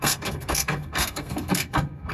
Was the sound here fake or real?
fake